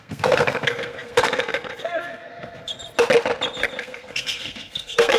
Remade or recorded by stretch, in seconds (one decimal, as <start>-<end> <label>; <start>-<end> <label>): 0.0-2.7 remade; 2.7-3.8 recorded; 3.8-5.2 remade